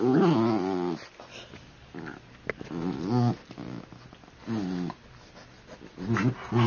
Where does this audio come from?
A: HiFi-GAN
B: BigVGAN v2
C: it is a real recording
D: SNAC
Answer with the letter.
C